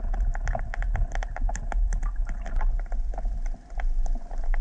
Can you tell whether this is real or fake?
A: real